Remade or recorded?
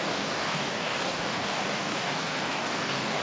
remade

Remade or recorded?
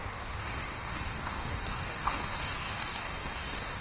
remade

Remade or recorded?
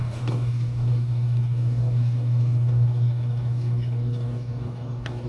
remade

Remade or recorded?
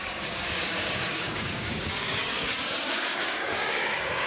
remade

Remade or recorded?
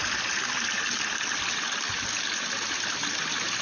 recorded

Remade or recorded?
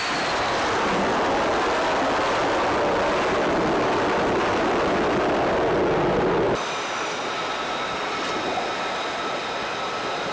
recorded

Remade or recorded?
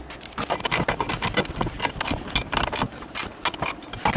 recorded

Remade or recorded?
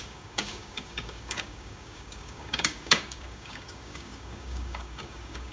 remade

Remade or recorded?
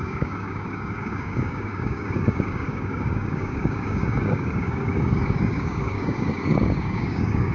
remade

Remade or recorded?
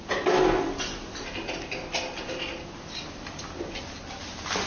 recorded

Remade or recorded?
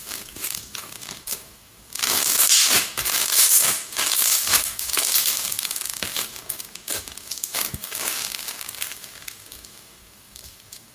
remade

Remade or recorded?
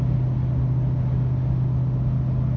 recorded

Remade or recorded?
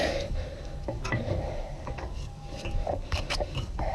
remade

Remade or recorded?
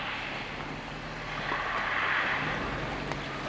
recorded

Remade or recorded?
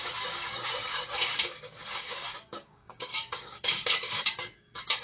remade